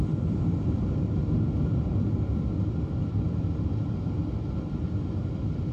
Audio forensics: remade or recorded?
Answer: recorded